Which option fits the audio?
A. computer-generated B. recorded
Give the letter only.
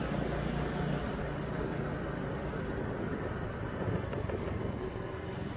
B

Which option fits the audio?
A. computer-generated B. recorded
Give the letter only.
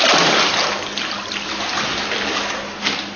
B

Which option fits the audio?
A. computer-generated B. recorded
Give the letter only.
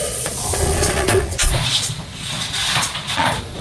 A